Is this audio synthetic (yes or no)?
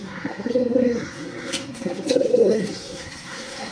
yes